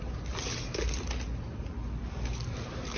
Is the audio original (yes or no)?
yes